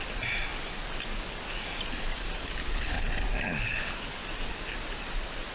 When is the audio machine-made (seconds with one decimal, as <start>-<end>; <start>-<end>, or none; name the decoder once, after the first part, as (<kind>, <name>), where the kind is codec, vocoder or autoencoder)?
2.6-3.1 (codec, HILCodec); 3.5-4.2